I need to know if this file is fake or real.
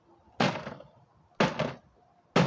real